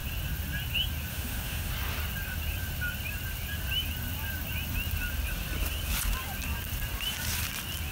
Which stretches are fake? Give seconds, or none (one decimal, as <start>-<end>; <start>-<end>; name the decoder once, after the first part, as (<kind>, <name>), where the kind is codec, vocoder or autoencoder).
1.1-1.7 (autoencoder, DAC-VAE)